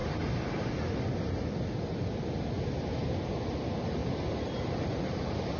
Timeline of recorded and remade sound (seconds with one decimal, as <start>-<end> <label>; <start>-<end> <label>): 0.0-2.4 remade; 2.4-4.0 recorded; 4.0-4.9 remade; 4.9-5.6 recorded